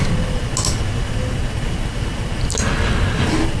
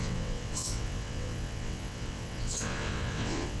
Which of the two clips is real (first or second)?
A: first